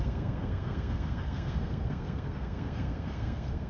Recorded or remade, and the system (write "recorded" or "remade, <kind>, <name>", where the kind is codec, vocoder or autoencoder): remade, codec, SNAC